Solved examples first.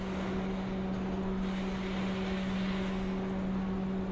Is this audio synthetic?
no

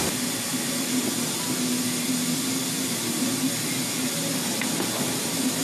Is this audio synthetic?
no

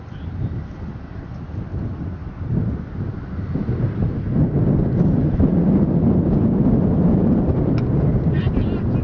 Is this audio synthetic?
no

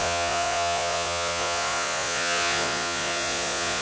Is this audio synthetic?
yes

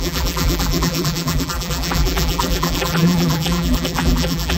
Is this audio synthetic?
yes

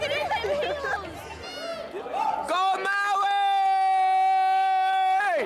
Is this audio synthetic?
no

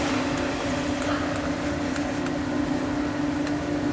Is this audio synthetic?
no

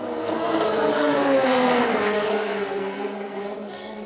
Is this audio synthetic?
yes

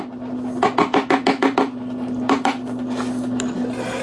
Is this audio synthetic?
no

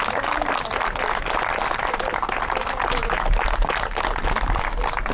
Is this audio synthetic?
no